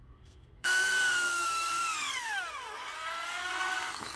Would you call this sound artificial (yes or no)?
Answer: yes